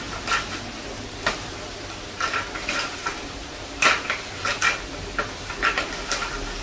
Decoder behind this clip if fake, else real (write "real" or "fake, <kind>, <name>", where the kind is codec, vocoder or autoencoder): real